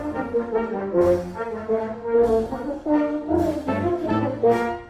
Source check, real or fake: fake